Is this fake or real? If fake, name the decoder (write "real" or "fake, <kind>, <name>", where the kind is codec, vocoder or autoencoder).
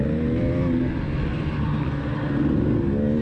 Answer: real